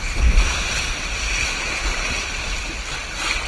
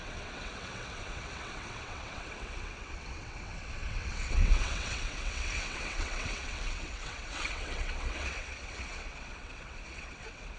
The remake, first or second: second